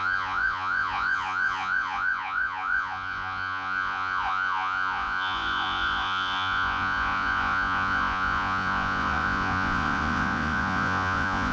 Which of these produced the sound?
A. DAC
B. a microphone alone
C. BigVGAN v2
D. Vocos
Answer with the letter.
D